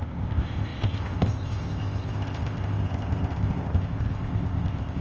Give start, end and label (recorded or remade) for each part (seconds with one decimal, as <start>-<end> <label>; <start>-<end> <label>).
0.0-5.0 remade